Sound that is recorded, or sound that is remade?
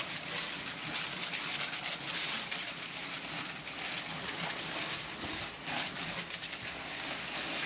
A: recorded